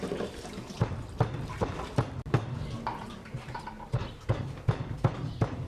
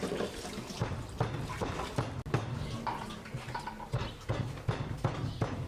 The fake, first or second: first